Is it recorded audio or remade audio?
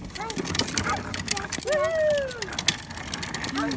recorded